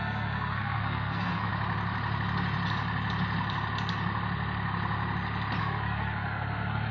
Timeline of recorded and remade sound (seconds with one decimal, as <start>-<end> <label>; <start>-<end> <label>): 0.0-1.5 remade; 1.5-5.6 recorded; 5.6-6.9 remade